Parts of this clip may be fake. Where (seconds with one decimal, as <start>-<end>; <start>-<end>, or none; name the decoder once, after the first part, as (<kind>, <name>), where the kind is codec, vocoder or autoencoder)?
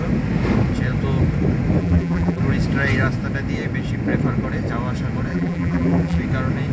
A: 1.8-2.4 (vocoder, BigVGAN v2); 5.3-6.2